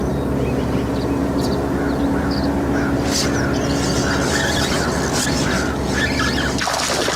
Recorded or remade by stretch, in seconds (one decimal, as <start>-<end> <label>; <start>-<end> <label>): 0.0-7.2 recorded